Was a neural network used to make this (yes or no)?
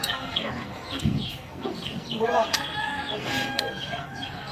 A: yes